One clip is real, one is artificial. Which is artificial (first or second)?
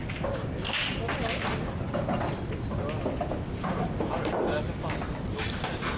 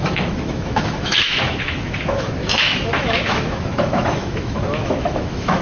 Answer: second